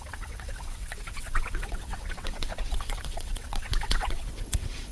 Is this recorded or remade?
remade